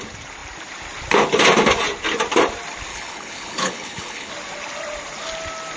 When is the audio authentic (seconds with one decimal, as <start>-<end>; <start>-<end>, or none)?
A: 0.0-2.9; 4.3-5.8